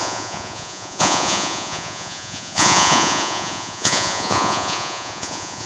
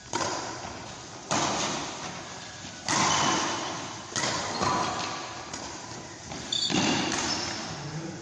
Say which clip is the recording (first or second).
second